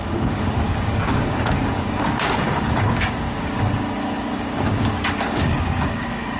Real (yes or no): no